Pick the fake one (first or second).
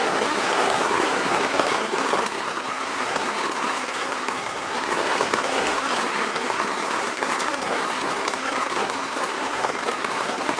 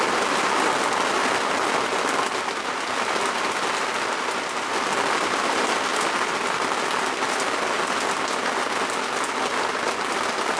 first